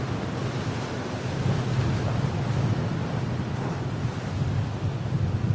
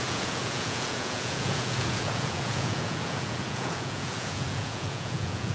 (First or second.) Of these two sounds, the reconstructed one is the second